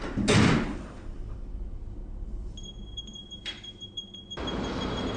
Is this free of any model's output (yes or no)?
yes